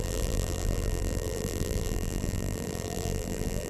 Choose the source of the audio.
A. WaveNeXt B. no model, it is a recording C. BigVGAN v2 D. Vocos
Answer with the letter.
C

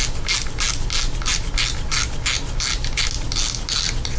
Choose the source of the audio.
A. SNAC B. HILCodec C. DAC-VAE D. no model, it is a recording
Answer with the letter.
D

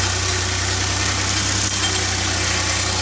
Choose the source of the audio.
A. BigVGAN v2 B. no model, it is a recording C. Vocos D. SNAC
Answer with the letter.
B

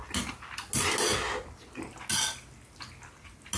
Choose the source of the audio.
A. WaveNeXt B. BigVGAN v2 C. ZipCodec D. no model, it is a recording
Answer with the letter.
D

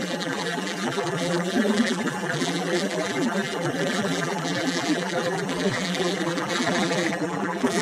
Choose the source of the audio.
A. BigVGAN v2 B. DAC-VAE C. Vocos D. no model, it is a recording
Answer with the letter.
A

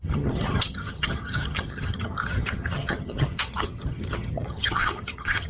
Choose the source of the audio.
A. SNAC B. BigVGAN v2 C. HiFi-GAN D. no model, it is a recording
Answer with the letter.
C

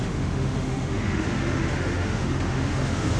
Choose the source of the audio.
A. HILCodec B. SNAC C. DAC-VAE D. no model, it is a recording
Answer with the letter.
C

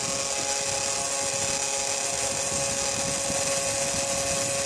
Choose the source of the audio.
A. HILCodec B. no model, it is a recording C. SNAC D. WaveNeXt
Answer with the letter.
B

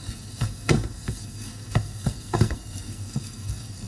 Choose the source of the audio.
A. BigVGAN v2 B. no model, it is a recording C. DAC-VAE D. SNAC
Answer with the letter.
D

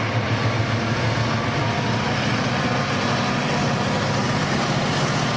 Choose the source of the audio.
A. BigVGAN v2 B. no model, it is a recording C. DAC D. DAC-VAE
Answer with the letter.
B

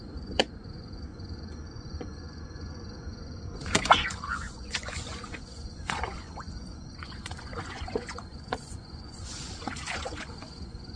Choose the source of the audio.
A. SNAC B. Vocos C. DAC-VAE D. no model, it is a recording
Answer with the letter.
B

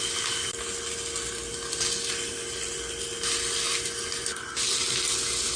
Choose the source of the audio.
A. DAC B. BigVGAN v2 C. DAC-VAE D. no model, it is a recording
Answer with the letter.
D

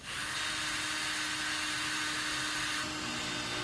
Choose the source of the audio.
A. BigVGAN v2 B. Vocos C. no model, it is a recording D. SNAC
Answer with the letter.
C